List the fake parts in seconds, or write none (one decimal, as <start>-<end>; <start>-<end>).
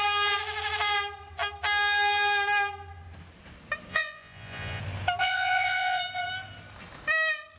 3.9-4.8; 5.2-6.0